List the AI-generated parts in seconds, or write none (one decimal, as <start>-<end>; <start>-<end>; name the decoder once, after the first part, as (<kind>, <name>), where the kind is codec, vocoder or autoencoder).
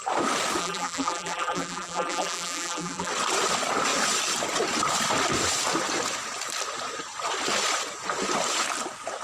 0.6-3.1 (vocoder, BigVGAN v2)